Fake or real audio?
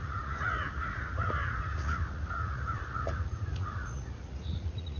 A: fake